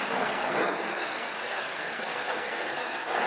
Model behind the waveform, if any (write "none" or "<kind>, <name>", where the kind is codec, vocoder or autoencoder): codec, SNAC